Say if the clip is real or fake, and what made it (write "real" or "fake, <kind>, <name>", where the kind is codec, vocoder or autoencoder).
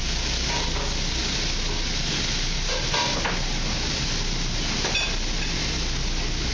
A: real